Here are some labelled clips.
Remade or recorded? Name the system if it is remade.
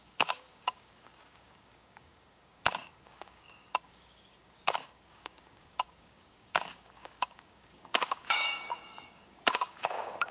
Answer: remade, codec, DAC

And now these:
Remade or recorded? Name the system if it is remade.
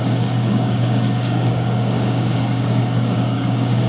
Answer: remade, codec, DAC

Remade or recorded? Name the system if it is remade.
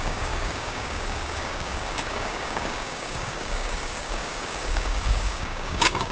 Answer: remade, codec, DAC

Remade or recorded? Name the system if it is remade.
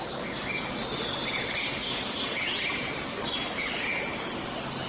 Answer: recorded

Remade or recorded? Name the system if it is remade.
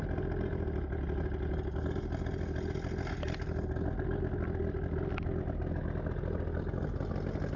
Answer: recorded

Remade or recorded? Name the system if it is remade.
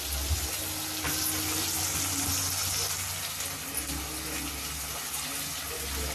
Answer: recorded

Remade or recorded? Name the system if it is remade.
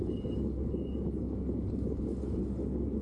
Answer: remade, codec, DAC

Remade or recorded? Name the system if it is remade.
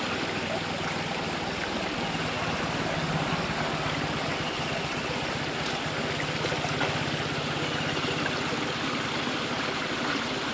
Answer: recorded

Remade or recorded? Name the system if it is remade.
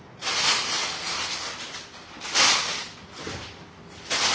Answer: recorded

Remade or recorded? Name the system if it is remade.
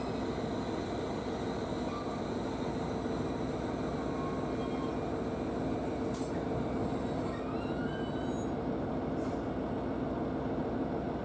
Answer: recorded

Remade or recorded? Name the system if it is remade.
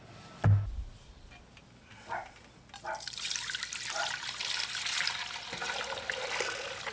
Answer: recorded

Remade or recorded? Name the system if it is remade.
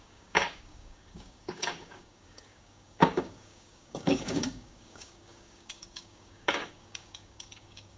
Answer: remade, codec, DAC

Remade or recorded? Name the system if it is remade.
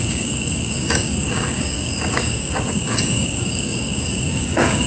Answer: remade, codec, DAC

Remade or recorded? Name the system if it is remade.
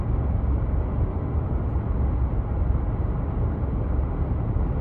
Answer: recorded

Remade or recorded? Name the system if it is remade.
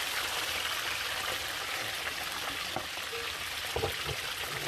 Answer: recorded